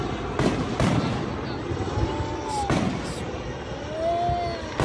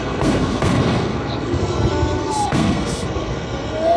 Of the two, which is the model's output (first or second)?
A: second